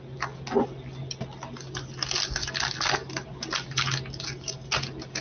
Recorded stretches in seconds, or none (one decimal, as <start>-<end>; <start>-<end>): 0.0-5.2